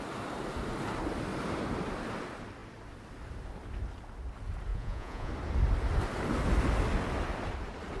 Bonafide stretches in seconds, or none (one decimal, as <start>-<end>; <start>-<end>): 0.0-4.7; 5.3-8.0